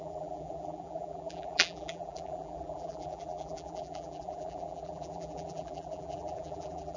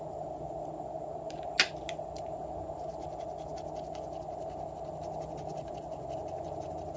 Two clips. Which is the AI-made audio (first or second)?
first